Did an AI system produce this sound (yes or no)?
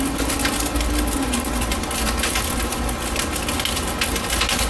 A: no